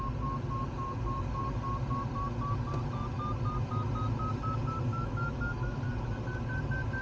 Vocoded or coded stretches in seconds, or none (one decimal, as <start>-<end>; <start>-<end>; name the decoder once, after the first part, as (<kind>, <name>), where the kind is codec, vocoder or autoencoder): 4.9-5.8 (autoencoder, DAC-VAE)

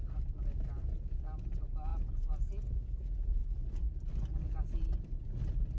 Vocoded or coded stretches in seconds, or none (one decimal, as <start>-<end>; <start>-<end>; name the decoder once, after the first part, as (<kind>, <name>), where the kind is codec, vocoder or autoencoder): none